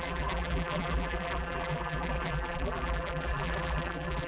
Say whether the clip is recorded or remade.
remade